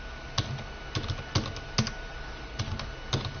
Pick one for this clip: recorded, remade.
recorded